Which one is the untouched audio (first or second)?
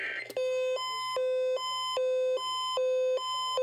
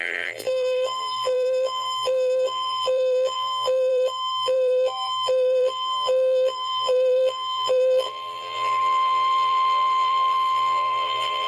first